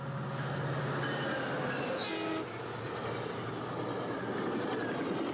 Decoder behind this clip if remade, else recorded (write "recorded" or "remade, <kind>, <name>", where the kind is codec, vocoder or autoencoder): recorded